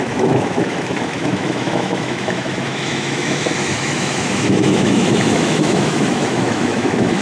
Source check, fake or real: fake